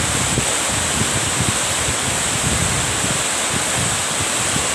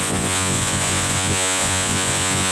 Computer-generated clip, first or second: second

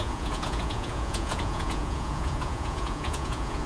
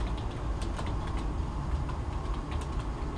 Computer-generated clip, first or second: first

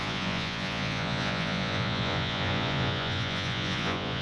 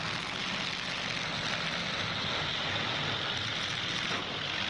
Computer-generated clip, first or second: first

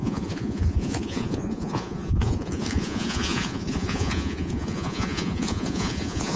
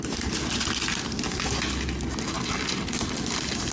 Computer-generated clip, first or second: first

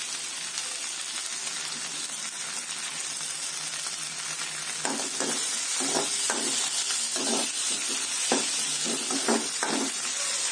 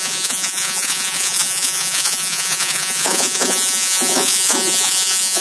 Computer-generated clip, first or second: second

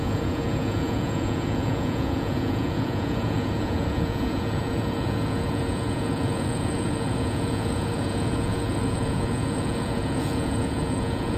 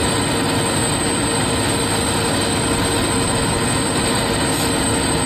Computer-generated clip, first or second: first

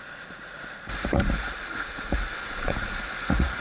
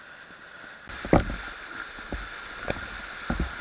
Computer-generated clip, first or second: first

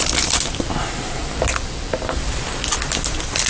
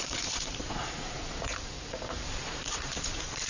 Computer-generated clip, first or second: second